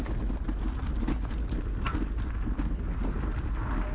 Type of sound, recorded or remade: recorded